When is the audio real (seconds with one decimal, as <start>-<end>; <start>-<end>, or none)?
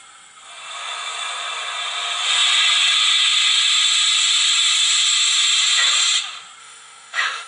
0.0-6.6